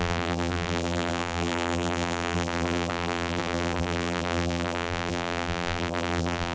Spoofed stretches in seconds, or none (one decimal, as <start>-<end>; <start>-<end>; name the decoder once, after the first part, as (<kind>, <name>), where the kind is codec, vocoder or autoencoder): 0.0-6.5 (vocoder, BigVGAN v2)

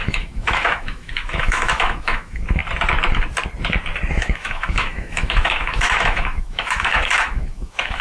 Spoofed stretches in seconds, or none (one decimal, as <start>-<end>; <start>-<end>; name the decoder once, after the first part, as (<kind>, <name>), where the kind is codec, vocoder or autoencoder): 0.0-2.6 (autoencoder, DAC-VAE); 4.1-8.0

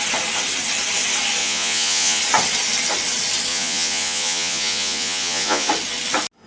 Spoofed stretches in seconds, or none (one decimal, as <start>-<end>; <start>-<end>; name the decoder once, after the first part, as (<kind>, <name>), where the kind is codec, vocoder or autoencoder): 1.4-2.2 (vocoder, Vocos); 3.5-5.7